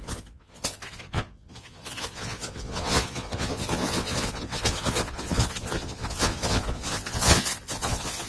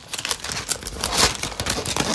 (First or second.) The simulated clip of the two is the first